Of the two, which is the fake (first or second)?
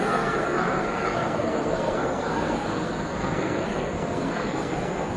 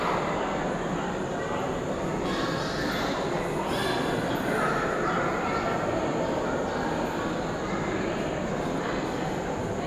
first